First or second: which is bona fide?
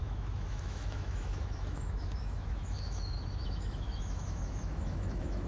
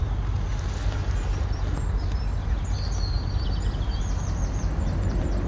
second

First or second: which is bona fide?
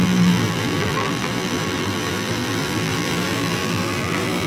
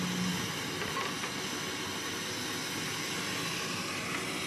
second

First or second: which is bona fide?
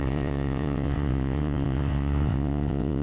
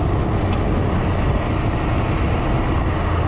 second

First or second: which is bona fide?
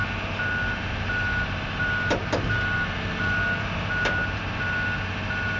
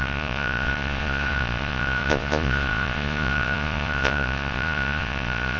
first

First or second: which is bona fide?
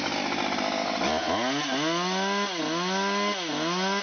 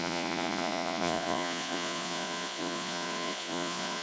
first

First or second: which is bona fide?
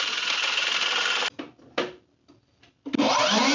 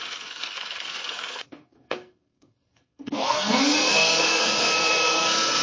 first